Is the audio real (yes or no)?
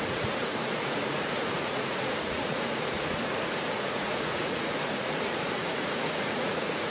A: no